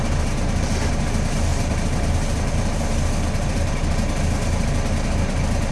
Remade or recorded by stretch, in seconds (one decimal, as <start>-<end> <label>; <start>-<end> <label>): 0.0-1.5 recorded; 1.5-3.7 remade; 3.7-5.7 recorded